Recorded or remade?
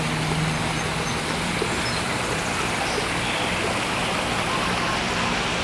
recorded